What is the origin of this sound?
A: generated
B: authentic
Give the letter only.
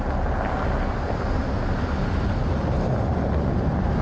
B